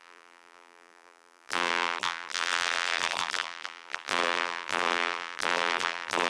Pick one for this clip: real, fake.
fake